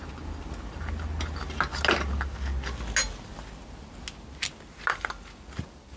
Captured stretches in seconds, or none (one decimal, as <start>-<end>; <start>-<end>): 0.0-6.0